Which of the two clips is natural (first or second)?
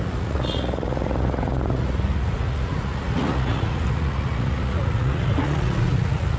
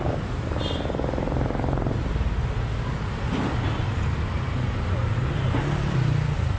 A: second